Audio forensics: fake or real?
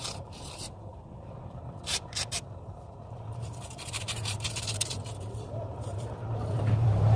fake